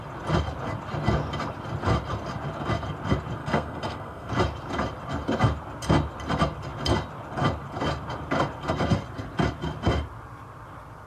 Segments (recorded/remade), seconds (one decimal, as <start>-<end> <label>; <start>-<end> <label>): 0.0-3.4 recorded; 3.4-4.3 remade; 4.3-11.1 recorded